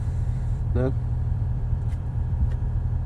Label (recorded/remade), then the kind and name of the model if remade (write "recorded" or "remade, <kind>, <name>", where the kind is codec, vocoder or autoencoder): remade, vocoder, BigVGAN v2